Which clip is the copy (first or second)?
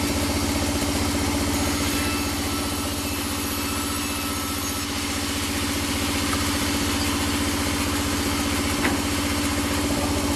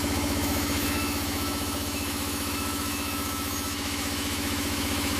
second